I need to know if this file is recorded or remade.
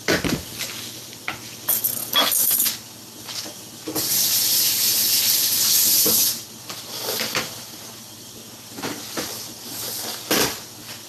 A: recorded